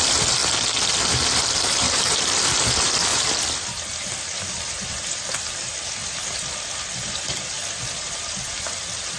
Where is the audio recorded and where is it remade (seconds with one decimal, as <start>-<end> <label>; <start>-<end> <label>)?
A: 0.0-0.4 remade; 0.4-1.2 recorded; 1.2-9.2 remade